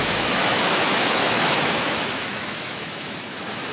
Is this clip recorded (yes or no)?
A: no